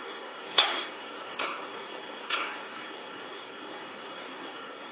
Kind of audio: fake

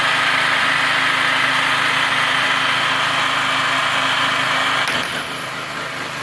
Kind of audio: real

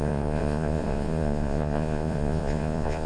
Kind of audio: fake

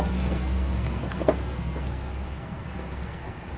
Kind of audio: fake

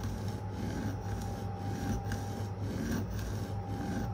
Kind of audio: real